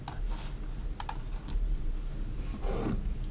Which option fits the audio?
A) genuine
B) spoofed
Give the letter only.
A